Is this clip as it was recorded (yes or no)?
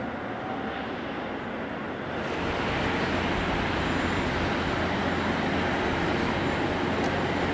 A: yes